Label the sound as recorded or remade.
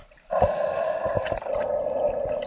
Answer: recorded